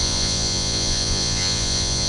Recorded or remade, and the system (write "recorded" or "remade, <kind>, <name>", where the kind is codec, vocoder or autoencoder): remade, vocoder, Vocos